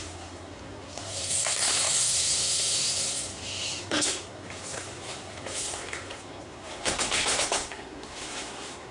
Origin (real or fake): fake